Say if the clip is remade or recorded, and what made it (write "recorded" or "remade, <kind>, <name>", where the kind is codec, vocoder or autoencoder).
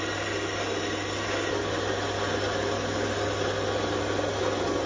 recorded